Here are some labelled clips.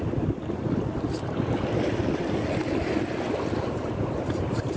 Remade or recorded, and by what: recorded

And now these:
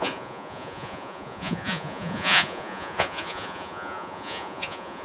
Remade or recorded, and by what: remade, vocoder, Vocos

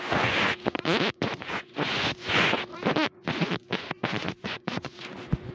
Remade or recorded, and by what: remade, vocoder, Vocos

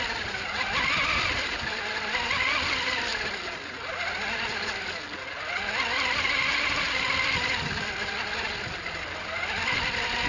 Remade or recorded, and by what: recorded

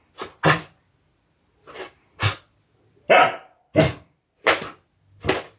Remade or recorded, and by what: recorded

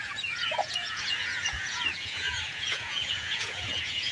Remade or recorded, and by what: remade, vocoder, Vocos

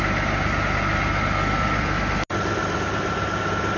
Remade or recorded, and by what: recorded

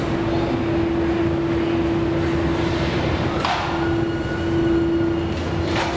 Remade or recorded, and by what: recorded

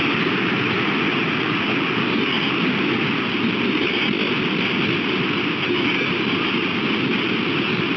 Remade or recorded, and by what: recorded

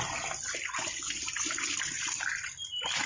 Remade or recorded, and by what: recorded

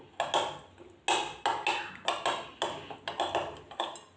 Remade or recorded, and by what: recorded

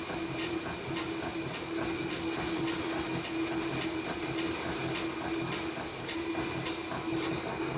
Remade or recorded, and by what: recorded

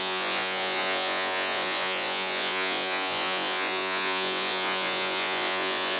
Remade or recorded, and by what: remade, vocoder, Vocos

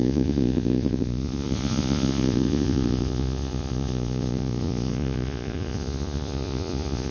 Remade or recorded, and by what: remade, vocoder, Vocos